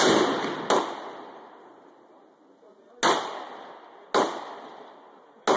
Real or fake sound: real